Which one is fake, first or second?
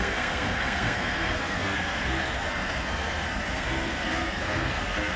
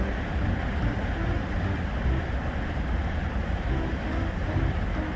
first